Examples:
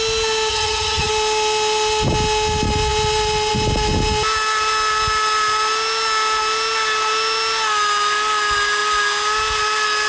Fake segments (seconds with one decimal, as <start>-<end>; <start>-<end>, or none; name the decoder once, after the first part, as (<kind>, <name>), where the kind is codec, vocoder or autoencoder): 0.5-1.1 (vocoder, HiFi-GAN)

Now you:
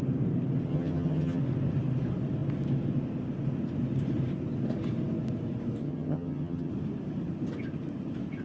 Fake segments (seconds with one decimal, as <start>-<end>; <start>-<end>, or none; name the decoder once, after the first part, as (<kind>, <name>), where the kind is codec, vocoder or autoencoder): 0.7-1.4 (vocoder, HiFi-GAN); 5.8-6.7

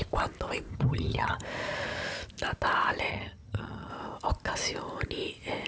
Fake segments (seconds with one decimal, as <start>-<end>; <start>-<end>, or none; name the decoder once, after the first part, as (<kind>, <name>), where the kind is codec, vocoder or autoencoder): 0.7-1.4 (vocoder, HiFi-GAN); 3.1-3.9

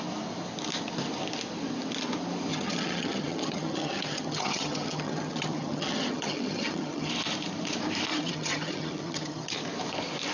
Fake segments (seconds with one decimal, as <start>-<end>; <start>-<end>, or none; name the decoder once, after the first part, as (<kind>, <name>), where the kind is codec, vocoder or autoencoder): 2.5-7.1 (vocoder, HiFi-GAN); 8.1-9.5

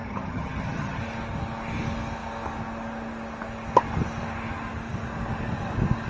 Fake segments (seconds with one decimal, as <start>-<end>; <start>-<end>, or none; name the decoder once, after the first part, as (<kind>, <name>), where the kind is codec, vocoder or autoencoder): 0.0-1.0 (vocoder, HiFi-GAN)